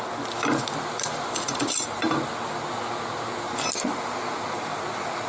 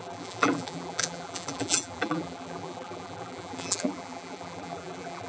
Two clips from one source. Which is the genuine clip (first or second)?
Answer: first